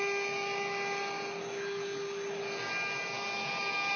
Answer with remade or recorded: recorded